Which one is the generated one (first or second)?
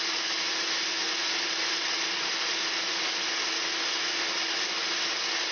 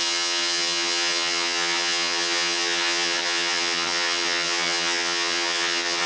second